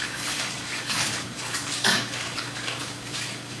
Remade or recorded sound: remade